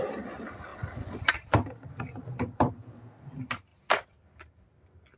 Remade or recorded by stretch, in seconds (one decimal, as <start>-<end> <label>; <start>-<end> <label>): 0.0-5.2 remade